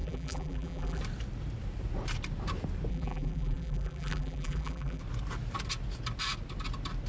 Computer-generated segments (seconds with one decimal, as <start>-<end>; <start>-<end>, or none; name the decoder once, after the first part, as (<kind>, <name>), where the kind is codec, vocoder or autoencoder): 0.0-1.0 (vocoder, BigVGAN v2); 2.9-5.0